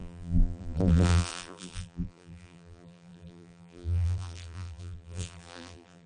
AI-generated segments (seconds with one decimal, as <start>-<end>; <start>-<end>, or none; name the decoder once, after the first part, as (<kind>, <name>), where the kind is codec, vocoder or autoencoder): 0.0-6.1 (vocoder, BigVGAN v2)